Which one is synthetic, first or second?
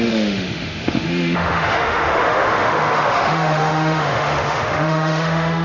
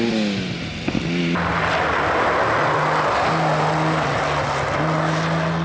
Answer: first